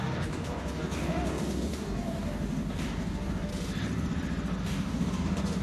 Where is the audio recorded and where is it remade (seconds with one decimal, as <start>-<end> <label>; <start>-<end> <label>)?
0.0-3.5 remade; 3.5-4.6 recorded; 4.6-5.6 remade